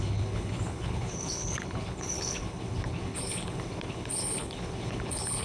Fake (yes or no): yes